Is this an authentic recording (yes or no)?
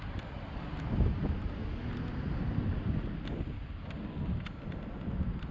yes